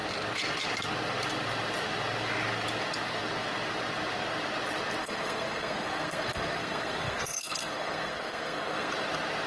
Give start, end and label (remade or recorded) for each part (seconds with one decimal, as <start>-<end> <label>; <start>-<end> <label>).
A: 0.0-5.0 recorded; 5.0-8.9 remade; 8.9-9.5 recorded